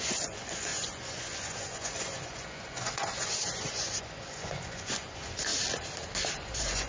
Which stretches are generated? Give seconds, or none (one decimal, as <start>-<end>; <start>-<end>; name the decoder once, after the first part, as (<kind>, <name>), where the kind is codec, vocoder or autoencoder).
0.0-5.5 (vocoder, Vocos); 6.4-6.9